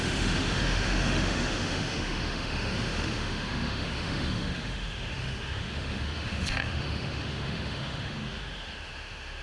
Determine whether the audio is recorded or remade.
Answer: remade